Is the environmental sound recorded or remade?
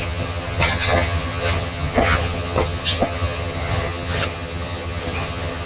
remade